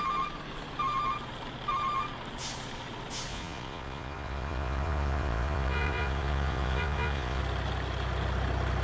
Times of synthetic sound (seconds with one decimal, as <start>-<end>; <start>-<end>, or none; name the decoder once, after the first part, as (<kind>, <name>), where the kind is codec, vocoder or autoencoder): 3.3-7.4 (vocoder, Vocos)